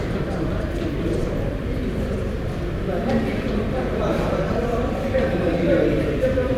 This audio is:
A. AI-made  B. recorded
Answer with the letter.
A